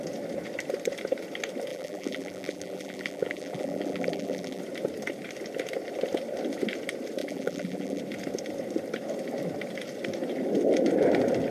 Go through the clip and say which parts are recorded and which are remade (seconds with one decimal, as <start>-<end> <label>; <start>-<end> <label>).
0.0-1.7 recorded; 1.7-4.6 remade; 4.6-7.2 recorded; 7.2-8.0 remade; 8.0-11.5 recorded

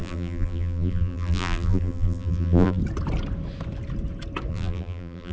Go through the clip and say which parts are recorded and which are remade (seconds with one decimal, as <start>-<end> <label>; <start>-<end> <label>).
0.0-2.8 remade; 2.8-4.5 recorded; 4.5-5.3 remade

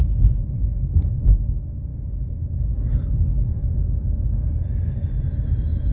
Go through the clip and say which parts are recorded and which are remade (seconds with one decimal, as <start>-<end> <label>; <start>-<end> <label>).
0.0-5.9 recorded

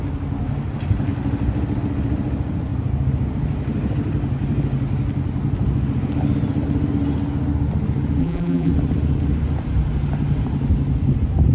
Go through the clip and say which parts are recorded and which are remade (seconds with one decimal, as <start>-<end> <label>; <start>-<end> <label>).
0.0-8.2 recorded; 8.2-8.7 remade; 8.7-11.5 recorded